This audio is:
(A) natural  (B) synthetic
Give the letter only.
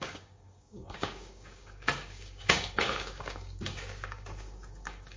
B